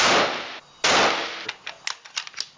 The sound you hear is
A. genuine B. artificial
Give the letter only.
A